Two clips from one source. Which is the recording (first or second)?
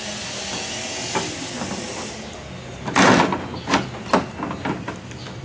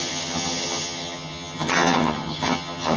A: first